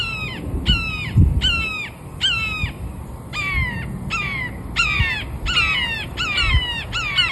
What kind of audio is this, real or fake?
real